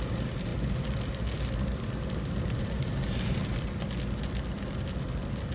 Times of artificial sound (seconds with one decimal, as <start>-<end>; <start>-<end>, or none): none